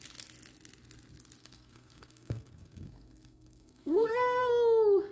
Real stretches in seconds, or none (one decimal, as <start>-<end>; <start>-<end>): 0.0-1.4; 4.5-5.1